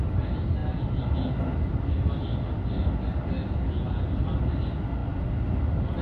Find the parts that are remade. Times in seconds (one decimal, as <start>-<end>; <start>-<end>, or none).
none